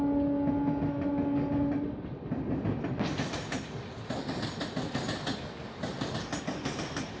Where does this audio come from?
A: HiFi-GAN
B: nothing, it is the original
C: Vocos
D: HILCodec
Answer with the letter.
B